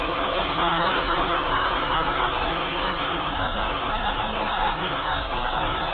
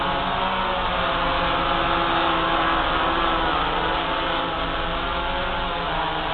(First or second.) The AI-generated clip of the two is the first